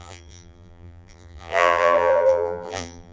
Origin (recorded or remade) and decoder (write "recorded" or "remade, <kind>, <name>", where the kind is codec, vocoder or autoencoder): remade, vocoder, BigVGAN v2